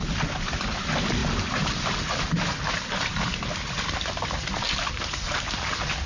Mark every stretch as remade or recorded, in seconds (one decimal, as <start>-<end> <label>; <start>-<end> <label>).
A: 0.0-6.1 recorded